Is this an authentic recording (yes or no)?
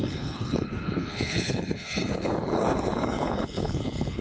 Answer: no